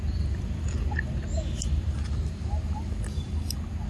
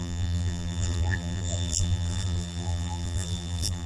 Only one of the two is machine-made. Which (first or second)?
second